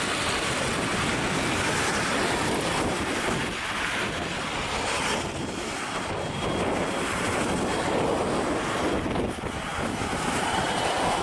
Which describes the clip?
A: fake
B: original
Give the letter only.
B